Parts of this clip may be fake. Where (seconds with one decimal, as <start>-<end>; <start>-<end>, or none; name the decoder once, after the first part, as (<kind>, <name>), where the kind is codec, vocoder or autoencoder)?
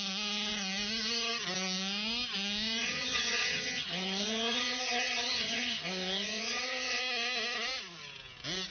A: 2.8-7.0 (vocoder, HiFi-GAN)